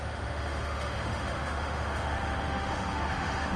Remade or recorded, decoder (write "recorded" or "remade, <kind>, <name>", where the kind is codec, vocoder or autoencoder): remade, autoencoder, DAC-VAE